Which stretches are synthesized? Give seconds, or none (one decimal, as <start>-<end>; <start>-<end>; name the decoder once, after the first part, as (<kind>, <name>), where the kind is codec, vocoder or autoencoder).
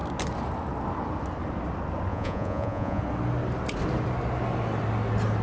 2.1-3.0 (vocoder, Vocos)